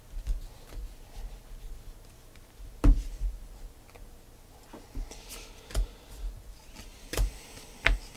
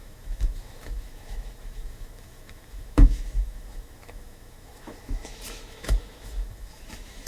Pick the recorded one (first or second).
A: first